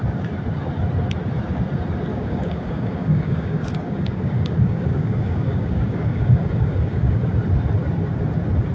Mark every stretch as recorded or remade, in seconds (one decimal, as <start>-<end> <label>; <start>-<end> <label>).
0.0-2.1 recorded; 2.1-7.3 remade; 7.3-8.7 recorded